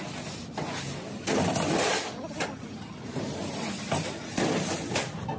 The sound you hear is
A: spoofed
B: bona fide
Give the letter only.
B